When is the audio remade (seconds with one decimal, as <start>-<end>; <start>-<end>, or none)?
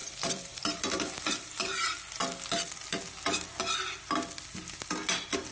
0.0-1.2